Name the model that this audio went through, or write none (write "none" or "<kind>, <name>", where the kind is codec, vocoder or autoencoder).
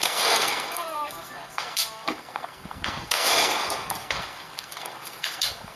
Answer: codec, SNAC